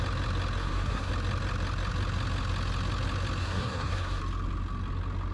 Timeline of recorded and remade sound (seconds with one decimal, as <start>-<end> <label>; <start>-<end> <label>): 0.0-0.6 recorded; 0.6-1.1 remade; 1.1-3.4 recorded; 3.4-4.2 remade; 4.2-5.3 recorded